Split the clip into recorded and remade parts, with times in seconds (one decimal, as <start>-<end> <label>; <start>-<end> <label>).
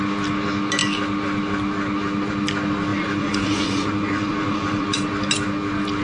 0.0-2.9 recorded; 2.9-5.0 remade; 5.0-6.0 recorded